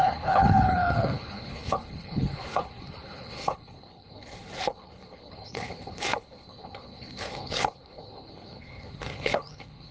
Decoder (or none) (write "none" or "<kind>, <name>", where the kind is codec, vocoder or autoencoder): codec, HILCodec